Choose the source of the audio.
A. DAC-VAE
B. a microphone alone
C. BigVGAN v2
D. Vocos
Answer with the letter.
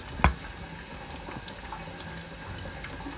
B